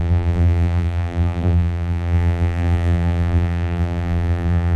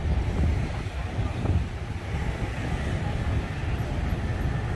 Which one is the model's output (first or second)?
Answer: first